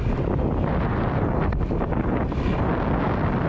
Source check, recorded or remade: recorded